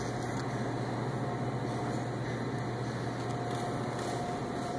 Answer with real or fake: real